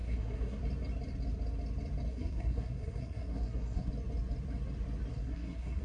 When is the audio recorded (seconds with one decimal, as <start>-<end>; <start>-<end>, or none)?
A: 0.6-2.1; 3.9-5.1